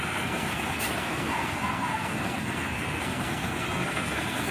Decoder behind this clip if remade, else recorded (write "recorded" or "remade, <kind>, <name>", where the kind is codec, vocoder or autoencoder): remade, codec, SNAC